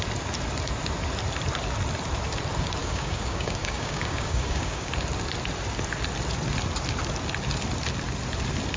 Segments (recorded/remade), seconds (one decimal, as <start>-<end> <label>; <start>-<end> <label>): 0.0-2.8 recorded; 2.8-4.9 remade; 4.9-8.8 recorded